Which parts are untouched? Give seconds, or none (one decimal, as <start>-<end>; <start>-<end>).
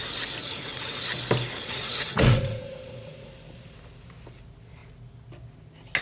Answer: 0.0-0.4; 1.0-1.6; 3.3-6.0